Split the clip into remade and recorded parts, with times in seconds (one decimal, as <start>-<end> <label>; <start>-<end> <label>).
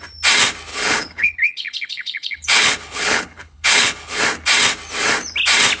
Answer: 0.0-0.7 recorded; 0.7-4.2 remade; 4.2-5.8 recorded